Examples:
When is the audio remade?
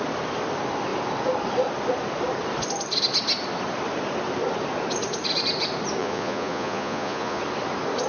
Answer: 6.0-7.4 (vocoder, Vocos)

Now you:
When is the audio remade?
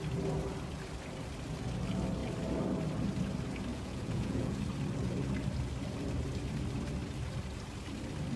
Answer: 3.7-4.6 (vocoder, Vocos)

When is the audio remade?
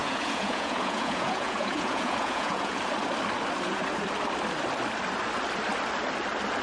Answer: 0.0-2.8 (vocoder, Vocos)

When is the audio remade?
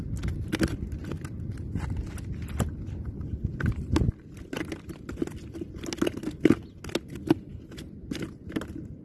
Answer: none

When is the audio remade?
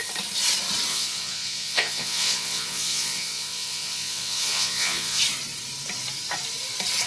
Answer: 0.9-5.2 (vocoder, Vocos)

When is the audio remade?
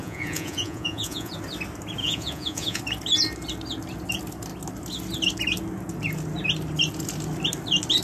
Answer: 0.0-1.3 (vocoder, Vocos); 2.0-2.8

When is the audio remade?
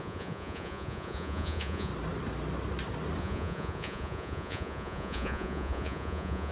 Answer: 0.0-1.9 (vocoder, Vocos); 3.2-6.5